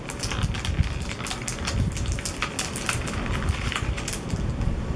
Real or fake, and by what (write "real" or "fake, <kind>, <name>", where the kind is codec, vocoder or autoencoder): real